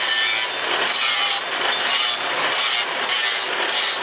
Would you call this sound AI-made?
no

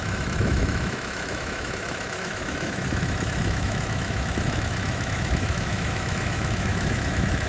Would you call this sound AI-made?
yes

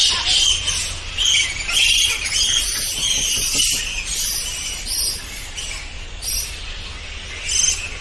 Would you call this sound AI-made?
no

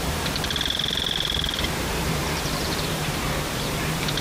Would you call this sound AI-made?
yes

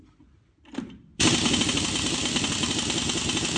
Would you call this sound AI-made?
no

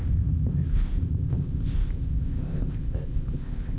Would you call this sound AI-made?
yes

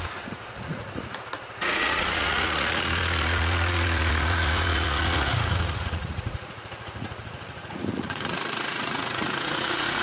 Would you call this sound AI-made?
yes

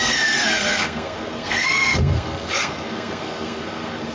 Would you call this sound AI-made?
yes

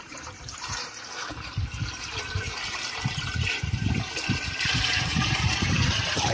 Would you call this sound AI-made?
yes